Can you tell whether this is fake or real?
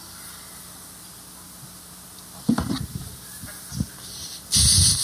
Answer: real